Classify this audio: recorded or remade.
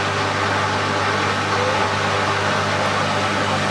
recorded